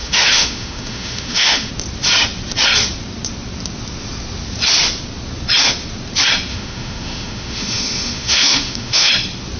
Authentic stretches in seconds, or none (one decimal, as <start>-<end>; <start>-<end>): 1.7-6.5; 9.1-9.6